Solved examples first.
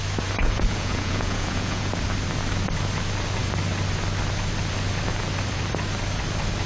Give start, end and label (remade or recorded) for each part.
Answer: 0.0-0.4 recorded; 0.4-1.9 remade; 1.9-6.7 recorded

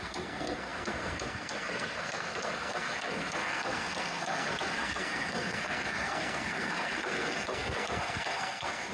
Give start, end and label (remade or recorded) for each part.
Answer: 0.0-8.9 remade

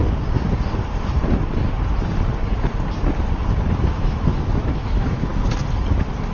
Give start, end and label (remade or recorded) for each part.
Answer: 0.0-3.8 recorded; 3.8-5.3 remade; 5.3-6.3 recorded